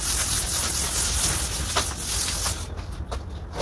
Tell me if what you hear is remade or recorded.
recorded